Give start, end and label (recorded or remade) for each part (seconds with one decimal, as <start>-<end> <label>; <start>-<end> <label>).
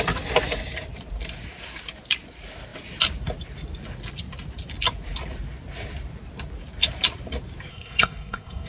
0.0-7.7 recorded; 7.7-8.7 remade